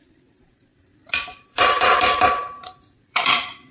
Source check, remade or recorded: remade